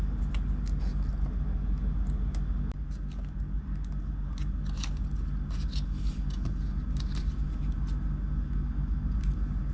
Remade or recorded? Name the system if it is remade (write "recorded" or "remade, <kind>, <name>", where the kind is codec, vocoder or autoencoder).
recorded